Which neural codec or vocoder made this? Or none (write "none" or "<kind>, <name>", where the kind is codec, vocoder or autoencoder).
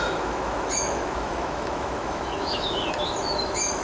autoencoder, DAC-VAE